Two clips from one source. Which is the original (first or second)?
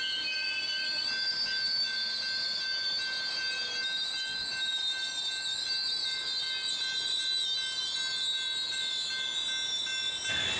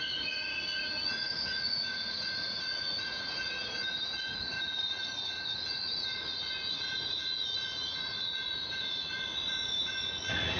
first